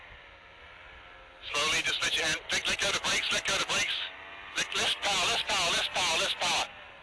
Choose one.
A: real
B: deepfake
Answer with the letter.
A